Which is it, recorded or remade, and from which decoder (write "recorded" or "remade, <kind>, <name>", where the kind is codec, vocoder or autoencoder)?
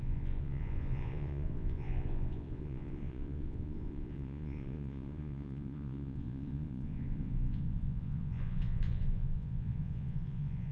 remade, vocoder, Vocos